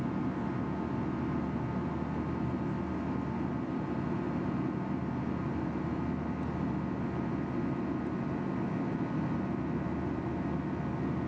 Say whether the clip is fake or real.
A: real